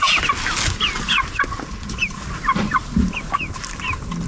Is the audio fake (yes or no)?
no